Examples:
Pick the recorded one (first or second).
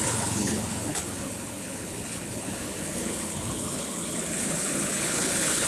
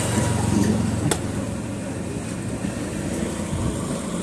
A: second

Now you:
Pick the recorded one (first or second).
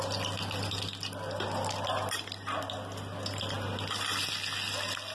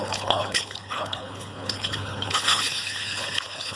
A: first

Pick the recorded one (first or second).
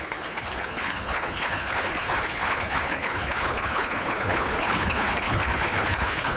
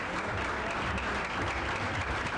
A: second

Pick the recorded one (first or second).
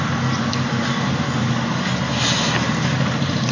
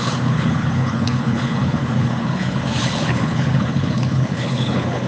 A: first